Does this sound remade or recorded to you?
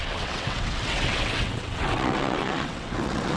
remade